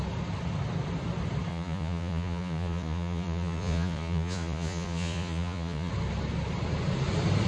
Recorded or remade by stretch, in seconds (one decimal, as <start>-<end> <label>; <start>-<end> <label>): 0.0-1.5 recorded; 1.5-5.9 remade; 5.9-7.5 recorded